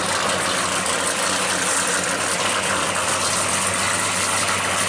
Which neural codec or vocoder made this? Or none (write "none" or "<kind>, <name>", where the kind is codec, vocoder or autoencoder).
none